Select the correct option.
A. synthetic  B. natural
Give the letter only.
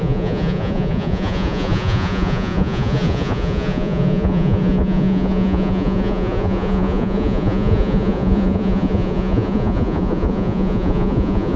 A